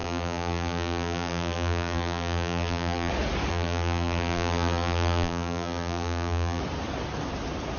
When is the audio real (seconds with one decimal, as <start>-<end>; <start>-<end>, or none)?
3.1-3.5; 6.6-7.8